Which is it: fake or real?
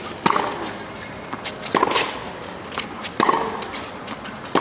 real